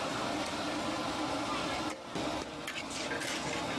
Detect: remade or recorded recorded